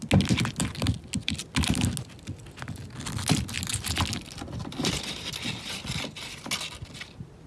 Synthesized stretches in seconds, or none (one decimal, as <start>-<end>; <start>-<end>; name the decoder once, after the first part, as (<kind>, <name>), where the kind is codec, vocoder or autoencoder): none